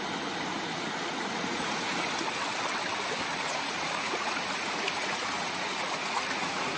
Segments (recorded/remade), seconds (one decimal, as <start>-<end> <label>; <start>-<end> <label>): 0.0-1.0 recorded; 1.0-2.2 remade; 2.2-3.3 recorded; 3.3-6.8 remade